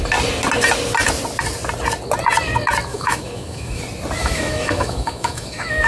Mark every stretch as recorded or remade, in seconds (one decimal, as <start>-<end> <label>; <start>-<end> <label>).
0.0-2.9 recorded; 2.9-3.8 remade; 3.8-4.2 recorded; 4.2-5.9 remade